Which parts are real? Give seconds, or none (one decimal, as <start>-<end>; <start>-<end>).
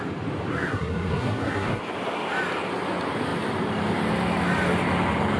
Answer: 0.0-0.5; 1.8-5.4